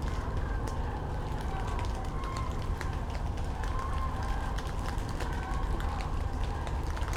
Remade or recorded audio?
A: recorded